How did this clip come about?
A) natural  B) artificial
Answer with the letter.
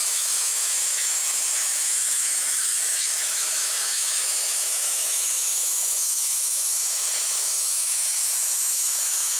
B